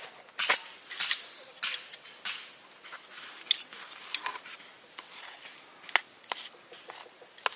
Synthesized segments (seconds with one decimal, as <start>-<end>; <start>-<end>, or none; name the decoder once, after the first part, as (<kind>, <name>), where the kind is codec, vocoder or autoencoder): none